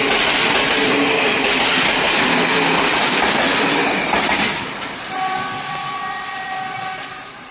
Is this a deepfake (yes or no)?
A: no